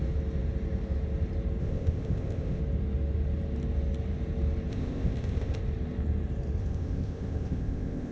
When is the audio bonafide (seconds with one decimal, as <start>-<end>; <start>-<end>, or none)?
0.0-1.6; 2.6-4.7; 5.6-6.6